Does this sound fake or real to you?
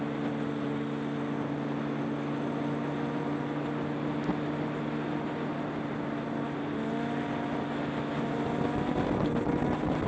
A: real